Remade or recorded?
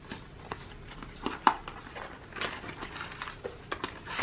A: recorded